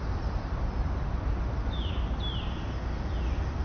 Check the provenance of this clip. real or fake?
real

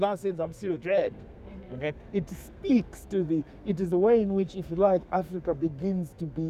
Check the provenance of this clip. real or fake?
fake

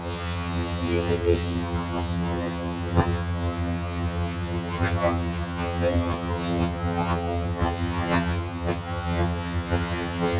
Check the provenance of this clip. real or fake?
fake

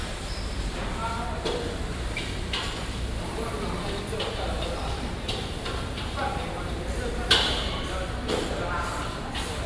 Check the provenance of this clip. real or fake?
fake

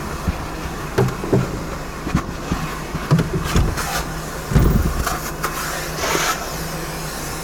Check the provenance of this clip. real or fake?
real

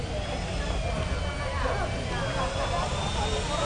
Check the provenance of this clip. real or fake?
real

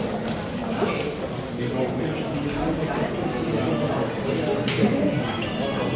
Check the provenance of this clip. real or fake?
real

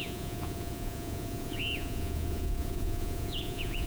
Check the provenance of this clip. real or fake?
fake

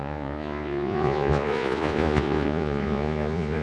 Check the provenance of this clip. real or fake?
fake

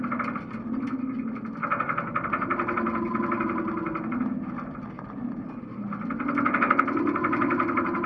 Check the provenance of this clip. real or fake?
real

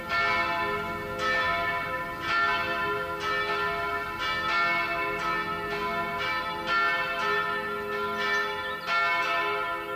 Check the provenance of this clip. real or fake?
real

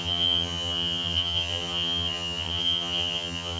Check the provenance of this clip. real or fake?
fake